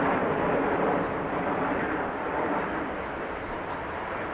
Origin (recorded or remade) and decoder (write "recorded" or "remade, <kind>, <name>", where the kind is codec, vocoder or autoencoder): remade, vocoder, BigVGAN v2